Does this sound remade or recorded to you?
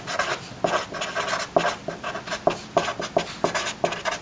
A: recorded